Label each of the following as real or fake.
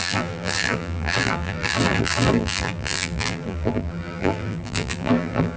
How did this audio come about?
fake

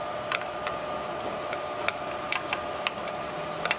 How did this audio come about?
real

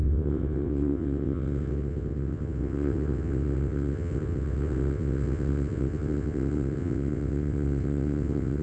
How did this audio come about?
fake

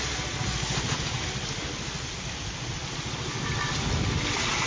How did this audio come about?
real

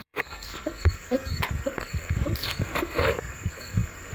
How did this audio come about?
fake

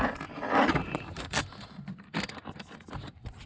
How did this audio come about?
real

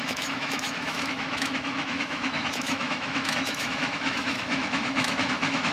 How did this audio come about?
fake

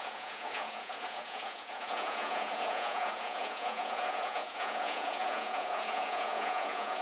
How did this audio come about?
fake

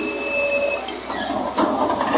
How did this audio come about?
real